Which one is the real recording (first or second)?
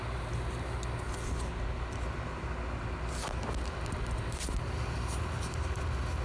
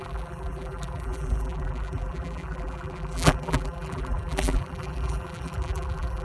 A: first